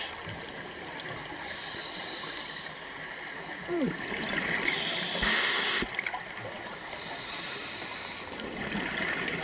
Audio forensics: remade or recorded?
recorded